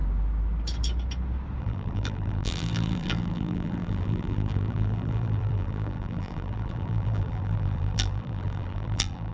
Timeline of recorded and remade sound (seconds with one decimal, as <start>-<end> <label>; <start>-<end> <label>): 0.0-1.6 recorded; 1.6-9.3 remade